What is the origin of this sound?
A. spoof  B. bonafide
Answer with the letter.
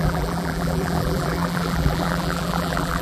A